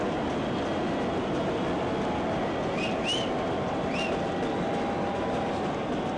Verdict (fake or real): real